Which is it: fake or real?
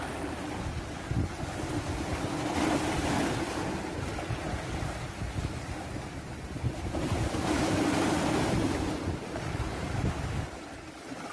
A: real